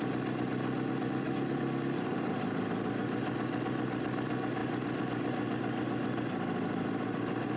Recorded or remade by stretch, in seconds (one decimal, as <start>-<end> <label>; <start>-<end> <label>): 0.0-7.6 recorded